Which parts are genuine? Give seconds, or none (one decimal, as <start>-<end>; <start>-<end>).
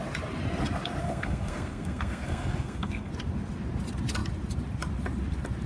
0.0-1.0; 3.1-5.7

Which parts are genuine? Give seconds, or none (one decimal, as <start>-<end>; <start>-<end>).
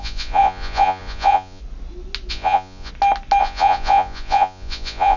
1.6-2.3; 2.9-3.4